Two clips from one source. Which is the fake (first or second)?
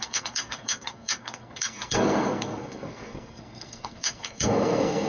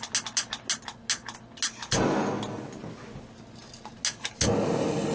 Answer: first